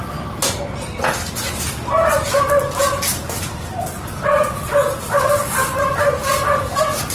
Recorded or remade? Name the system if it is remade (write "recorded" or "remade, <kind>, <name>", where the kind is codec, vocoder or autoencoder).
recorded